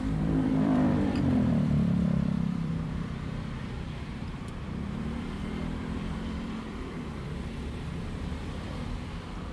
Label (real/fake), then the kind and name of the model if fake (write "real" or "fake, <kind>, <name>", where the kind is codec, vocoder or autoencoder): fake, vocoder, BigVGAN v2